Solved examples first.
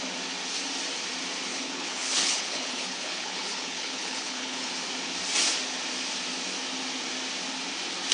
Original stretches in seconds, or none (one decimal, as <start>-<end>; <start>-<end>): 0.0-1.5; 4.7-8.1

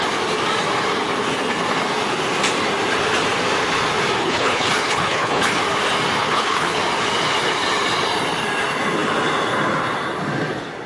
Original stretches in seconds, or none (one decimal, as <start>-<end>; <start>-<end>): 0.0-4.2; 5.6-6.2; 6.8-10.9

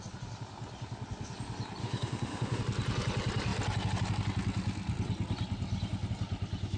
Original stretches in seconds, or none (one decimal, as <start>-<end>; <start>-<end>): 0.0-1.8; 2.6-6.8

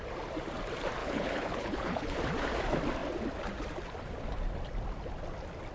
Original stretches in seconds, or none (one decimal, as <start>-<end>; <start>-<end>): 0.0-1.0; 2.2-5.7

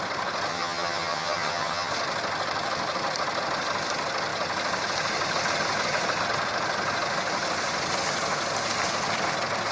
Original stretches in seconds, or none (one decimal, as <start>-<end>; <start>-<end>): 0.0-0.5; 1.9-9.7

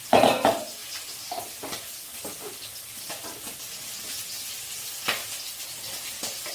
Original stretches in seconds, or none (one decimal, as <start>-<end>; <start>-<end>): 0.0-0.8; 4.1-6.5